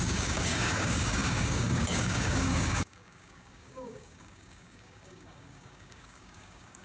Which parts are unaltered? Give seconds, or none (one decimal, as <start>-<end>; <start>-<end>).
none